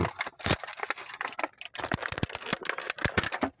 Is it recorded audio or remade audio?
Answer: recorded